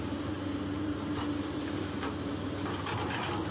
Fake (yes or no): no